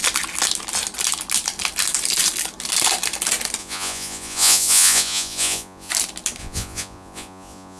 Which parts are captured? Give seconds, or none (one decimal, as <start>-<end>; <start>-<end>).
0.0-3.6; 5.9-6.4